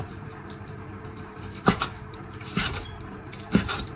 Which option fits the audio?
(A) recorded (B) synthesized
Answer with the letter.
B